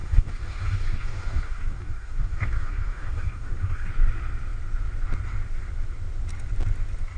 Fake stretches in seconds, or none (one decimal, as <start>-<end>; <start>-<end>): 0.0-3.9